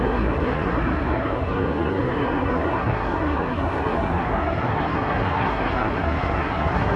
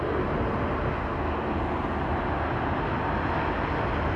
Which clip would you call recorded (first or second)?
second